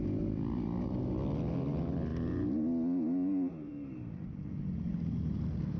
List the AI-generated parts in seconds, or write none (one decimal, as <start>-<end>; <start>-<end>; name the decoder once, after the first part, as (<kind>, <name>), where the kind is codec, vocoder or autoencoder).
none